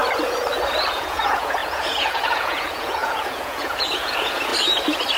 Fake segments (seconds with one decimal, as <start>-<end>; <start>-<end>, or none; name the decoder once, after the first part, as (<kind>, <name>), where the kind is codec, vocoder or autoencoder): 0.9-4.5 (vocoder, Vocos)